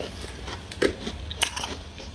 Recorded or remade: recorded